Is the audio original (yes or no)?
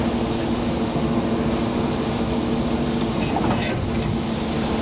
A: yes